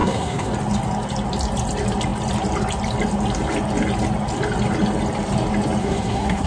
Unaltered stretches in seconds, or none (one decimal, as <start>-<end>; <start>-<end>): 0.5-5.8